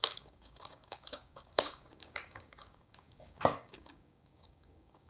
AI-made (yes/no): yes